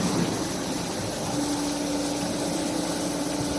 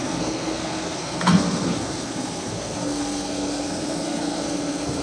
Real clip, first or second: first